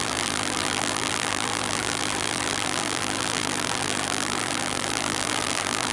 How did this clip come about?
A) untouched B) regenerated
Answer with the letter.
B